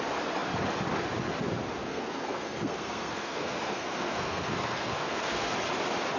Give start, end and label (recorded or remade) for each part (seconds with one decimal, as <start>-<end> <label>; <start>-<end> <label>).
0.0-1.8 recorded; 1.8-5.5 remade; 5.5-6.2 recorded